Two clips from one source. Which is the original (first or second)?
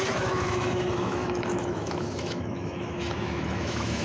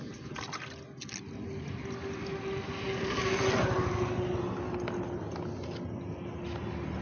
second